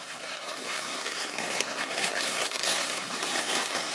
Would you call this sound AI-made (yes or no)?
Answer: yes